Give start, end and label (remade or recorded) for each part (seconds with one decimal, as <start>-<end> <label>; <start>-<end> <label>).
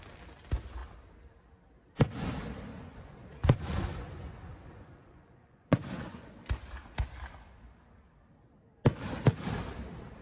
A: 0.0-2.7 recorded; 2.7-6.3 remade; 6.3-10.2 recorded